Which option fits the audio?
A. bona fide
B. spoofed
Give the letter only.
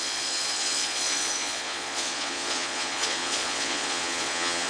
B